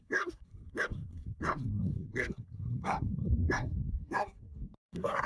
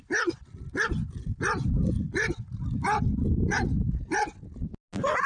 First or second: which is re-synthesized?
first